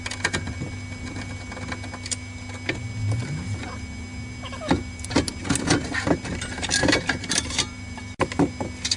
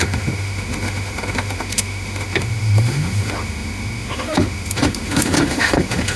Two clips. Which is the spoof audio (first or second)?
second